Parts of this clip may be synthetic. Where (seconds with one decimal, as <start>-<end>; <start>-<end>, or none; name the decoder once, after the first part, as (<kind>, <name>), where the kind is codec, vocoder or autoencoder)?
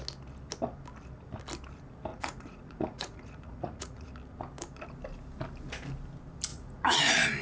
2.1-4.1 (vocoder, Vocos); 6.5-7.0